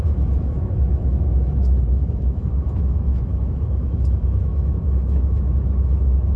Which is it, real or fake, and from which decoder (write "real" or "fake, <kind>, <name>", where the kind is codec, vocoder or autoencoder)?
fake, autoencoder, DAC-VAE